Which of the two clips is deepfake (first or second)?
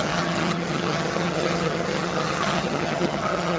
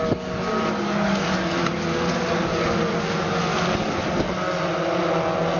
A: first